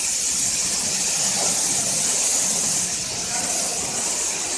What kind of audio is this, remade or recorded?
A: recorded